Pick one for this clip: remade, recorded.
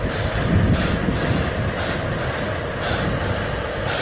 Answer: recorded